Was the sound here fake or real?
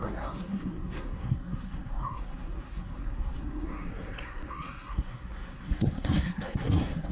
fake